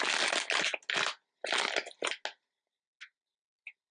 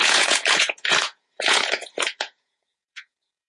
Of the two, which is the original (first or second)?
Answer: first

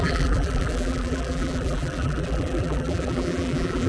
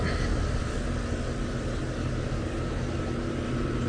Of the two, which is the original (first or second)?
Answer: second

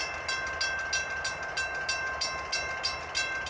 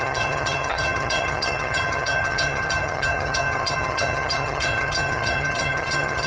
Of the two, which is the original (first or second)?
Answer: first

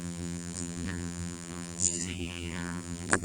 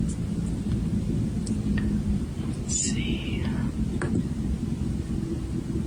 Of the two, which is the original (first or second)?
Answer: second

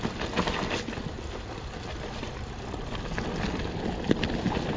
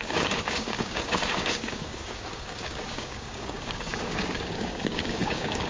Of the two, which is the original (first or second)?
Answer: first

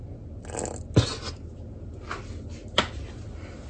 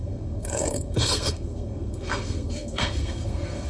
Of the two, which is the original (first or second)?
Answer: first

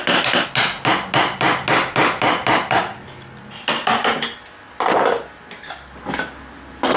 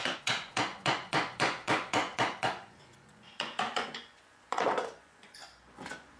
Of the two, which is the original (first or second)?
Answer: first